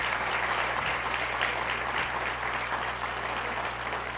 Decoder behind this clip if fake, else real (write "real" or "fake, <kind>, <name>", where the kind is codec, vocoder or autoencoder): fake, vocoder, BigVGAN v2